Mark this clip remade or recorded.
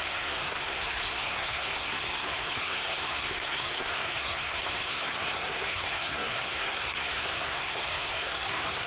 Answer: remade